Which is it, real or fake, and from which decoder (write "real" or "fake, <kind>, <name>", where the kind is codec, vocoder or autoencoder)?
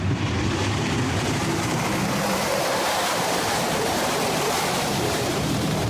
fake, vocoder, BigVGAN v2